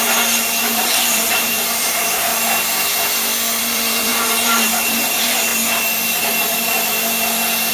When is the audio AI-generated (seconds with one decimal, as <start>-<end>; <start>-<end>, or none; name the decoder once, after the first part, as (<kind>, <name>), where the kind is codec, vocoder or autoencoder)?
0.0-2.3 (vocoder, BigVGAN v2); 3.6-5.5